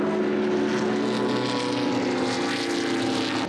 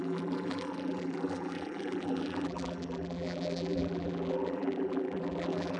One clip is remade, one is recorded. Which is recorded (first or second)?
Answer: first